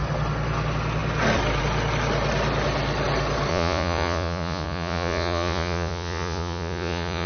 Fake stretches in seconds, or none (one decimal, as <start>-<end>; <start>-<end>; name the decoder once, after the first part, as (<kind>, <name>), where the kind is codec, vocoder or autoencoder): 3.5-7.3 (vocoder, Vocos)